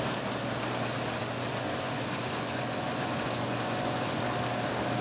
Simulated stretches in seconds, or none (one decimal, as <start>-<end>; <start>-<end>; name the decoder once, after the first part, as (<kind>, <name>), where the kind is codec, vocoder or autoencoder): 1.2-4.2 (vocoder, Vocos)

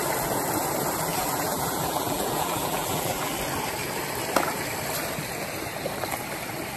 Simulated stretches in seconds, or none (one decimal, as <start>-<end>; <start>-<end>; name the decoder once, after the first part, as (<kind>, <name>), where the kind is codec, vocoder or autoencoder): 1.1-3.3 (vocoder, BigVGAN v2)